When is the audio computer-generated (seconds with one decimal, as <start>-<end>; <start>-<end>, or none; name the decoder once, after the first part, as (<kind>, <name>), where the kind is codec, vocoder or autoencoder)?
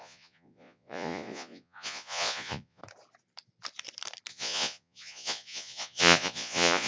0.0-2.8 (vocoder, Vocos); 4.3-6.9